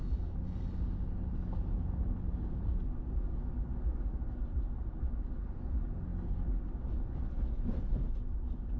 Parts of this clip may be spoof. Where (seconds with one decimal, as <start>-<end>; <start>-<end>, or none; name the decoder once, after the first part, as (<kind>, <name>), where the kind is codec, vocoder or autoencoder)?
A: none